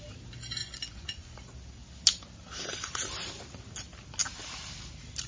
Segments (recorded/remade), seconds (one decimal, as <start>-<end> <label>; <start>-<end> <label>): 0.0-0.6 recorded; 0.6-1.5 remade; 1.5-5.3 recorded